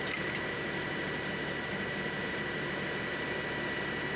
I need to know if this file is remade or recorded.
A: recorded